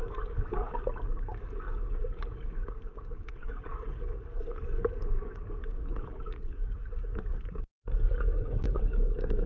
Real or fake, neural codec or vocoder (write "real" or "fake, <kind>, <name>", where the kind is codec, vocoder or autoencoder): fake, codec, DAC